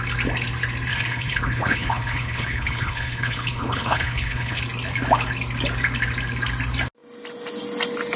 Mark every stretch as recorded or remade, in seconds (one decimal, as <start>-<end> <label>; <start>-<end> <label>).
0.0-0.9 recorded; 0.9-4.6 remade; 4.6-8.2 recorded